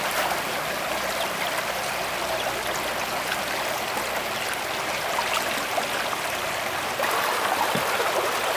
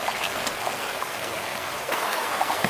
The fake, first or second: second